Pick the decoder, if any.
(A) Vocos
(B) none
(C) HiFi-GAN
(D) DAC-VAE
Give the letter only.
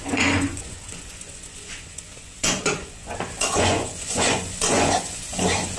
A